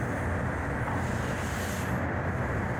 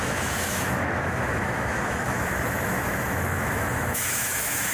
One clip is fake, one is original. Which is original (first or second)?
first